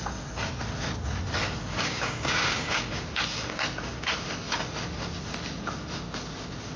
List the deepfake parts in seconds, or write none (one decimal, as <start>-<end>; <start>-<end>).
1.7-2.9